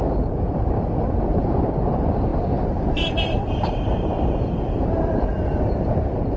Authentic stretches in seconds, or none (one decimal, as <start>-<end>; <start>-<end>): none